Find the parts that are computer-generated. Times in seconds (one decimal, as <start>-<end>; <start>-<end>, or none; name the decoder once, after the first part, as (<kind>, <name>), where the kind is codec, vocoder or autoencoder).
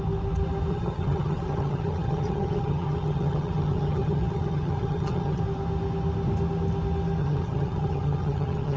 0.7-5.4 (vocoder, HiFi-GAN); 7.2-8.8